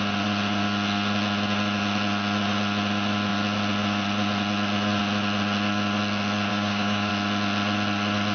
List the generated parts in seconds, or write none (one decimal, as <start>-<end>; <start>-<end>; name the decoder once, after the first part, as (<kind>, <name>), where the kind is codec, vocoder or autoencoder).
6.5-7.1 (codec, DAC)

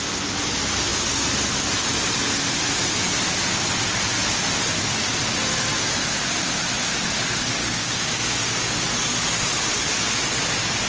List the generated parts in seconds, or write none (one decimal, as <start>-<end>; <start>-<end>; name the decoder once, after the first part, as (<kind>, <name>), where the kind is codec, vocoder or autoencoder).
7.6-8.2 (codec, DAC)

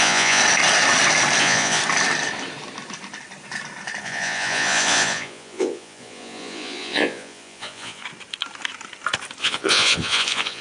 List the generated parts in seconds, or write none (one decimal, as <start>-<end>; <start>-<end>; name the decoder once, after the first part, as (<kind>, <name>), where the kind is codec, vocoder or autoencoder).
0.0-0.4 (vocoder, Vocos); 1.4-1.8; 4.0-8.0; 9.4-10.6